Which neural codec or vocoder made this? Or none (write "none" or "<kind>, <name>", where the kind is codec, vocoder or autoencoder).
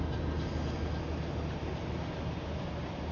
none